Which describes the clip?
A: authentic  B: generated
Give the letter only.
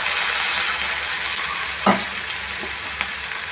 A